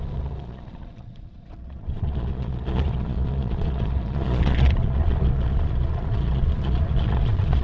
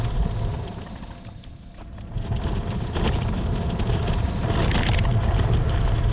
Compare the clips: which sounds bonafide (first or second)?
second